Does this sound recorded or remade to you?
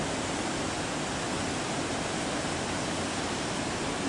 recorded